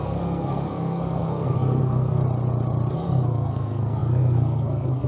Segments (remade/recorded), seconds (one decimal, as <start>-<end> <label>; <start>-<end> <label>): 0.0-2.2 remade; 2.2-2.9 recorded; 2.9-5.1 remade